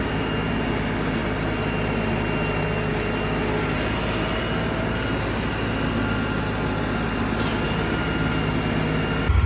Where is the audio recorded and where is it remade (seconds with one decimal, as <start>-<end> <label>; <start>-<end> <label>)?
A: 0.0-9.5 recorded